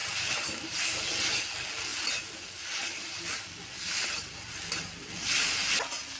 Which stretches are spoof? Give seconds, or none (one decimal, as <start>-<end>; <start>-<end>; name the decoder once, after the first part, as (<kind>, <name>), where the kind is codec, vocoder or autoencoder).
none